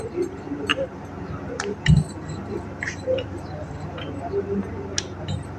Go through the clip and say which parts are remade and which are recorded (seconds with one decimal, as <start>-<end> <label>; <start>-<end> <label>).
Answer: 0.0-0.7 recorded; 0.7-4.1 remade; 4.1-5.6 recorded